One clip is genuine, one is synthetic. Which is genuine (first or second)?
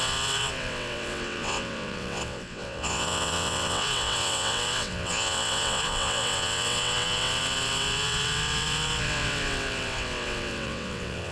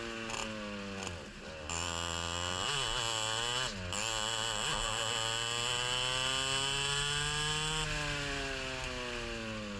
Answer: second